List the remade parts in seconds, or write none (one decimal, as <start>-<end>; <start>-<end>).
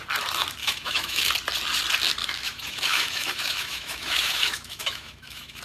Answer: 0.6-1.3; 2.2-5.6